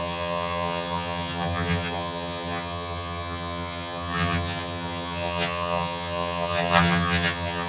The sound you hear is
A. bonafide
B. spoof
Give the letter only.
B